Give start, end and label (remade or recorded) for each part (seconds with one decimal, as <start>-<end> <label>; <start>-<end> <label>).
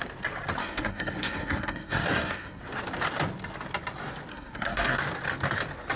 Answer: 0.0-0.6 recorded; 0.6-2.6 remade; 2.6-4.3 recorded; 4.3-5.0 remade; 5.0-6.0 recorded